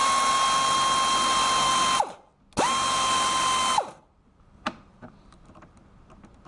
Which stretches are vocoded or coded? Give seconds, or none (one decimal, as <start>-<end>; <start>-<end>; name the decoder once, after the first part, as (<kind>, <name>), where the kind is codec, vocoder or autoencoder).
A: 3.9-6.5 (vocoder, BigVGAN v2)